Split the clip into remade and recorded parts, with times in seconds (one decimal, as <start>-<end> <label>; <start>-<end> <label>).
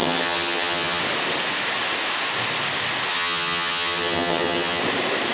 0.0-1.0 remade; 1.0-3.1 recorded; 3.1-4.8 remade; 4.8-5.3 recorded